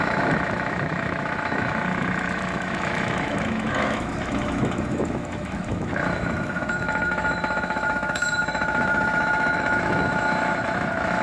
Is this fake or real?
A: fake